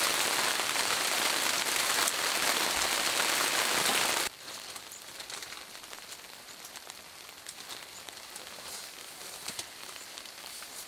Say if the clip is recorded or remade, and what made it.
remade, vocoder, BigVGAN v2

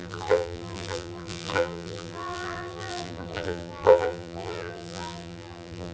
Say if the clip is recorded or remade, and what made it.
remade, vocoder, BigVGAN v2